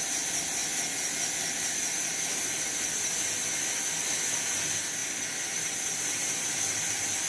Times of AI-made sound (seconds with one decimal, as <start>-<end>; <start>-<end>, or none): 5.0-6.6